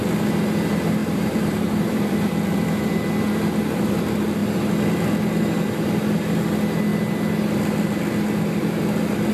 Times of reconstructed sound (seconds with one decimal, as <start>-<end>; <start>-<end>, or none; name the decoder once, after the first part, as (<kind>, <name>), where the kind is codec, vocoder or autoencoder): 1.0-2.3 (vocoder, BigVGAN v2)